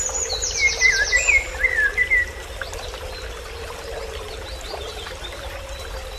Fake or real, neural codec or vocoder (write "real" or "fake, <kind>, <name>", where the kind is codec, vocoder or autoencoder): real